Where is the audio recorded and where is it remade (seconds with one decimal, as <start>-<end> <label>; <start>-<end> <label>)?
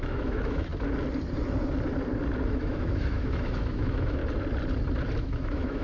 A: 0.0-0.7 remade; 0.7-2.5 recorded; 2.5-4.2 remade; 4.2-5.2 recorded; 5.2-5.8 remade